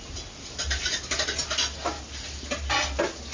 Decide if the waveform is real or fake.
real